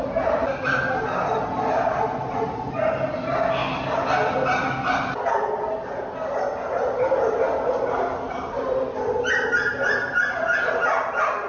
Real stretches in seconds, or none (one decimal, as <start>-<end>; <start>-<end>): 0.0-11.5